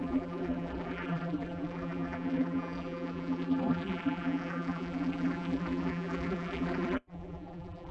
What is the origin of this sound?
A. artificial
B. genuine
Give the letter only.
A